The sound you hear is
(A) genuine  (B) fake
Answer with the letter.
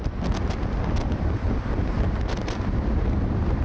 A